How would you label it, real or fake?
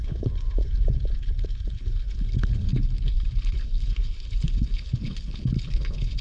fake